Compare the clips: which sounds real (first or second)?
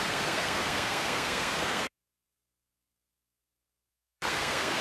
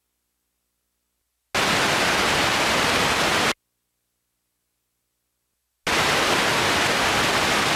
second